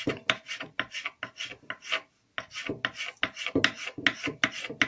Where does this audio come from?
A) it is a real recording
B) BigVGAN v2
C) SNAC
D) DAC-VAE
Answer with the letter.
A